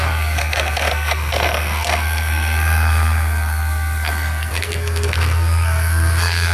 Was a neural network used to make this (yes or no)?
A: yes